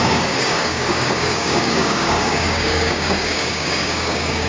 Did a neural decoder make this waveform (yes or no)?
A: yes